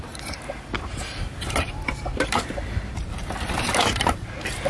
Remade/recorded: remade